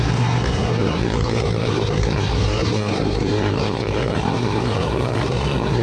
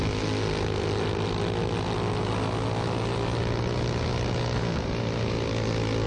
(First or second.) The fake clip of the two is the first